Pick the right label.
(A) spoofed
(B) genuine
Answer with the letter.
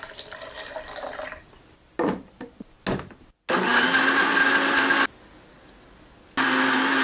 B